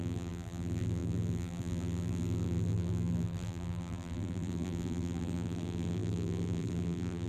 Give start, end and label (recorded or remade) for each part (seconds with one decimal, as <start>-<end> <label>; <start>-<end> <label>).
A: 0.0-7.3 remade